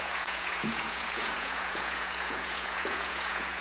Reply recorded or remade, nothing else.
remade